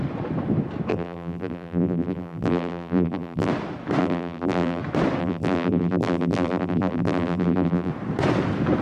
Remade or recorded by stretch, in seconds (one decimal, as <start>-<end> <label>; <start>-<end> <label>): 0.0-0.9 recorded; 0.9-3.5 remade; 3.5-4.0 recorded; 4.0-4.8 remade; 4.8-5.2 recorded; 5.2-7.9 remade; 7.9-8.8 recorded